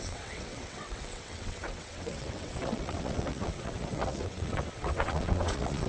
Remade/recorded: remade